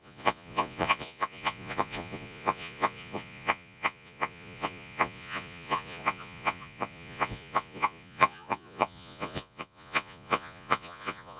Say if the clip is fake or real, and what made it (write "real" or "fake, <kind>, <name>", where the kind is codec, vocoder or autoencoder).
fake, vocoder, Vocos